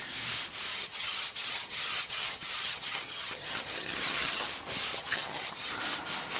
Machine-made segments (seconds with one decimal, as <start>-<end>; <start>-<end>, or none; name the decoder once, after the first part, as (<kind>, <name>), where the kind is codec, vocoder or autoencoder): 0.7-4.5 (vocoder, HiFi-GAN); 4.9-5.8